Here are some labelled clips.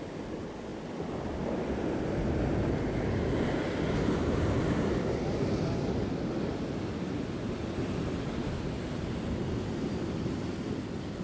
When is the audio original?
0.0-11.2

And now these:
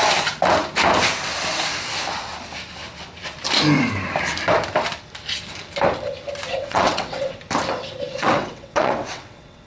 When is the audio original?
0.0-6.5; 7.4-8.1

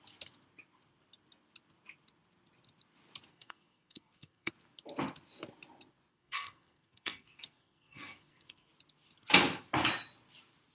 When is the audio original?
0.0-3.3; 4.5-6.1; 8.7-10.7